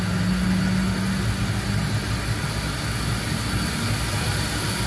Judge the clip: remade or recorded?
recorded